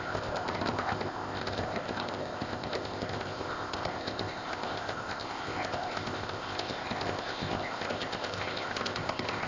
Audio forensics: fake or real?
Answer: fake